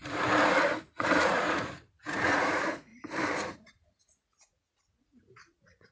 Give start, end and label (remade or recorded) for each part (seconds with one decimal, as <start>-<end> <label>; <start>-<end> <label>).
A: 0.0-0.9 recorded; 0.9-2.9 remade; 2.9-3.5 recorded; 3.5-5.9 remade